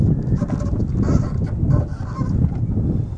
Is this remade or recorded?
recorded